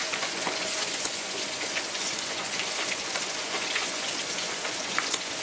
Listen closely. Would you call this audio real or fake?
fake